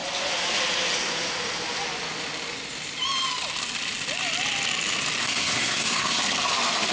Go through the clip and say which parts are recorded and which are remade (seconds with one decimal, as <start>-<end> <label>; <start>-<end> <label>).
0.0-5.2 recorded; 5.2-6.2 remade; 6.2-6.9 recorded